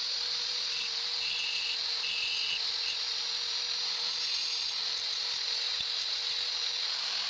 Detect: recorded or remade recorded